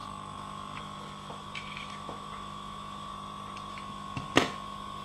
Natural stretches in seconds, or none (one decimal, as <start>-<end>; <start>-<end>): 3.1-3.7